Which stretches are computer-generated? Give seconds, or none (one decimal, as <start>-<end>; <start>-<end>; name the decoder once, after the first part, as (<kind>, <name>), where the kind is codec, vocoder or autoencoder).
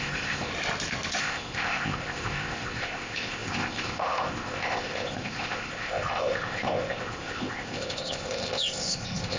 0.0-0.5 (codec, ZipCodec); 1.2-9.4